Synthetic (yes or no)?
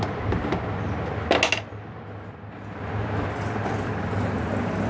no